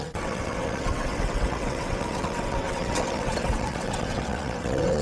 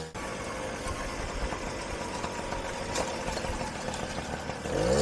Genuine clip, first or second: second